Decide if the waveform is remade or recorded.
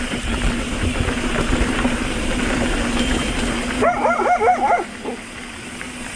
recorded